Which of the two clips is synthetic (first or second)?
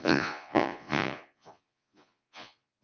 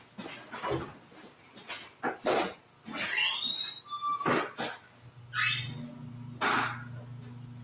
first